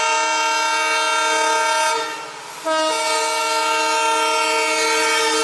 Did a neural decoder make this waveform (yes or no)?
no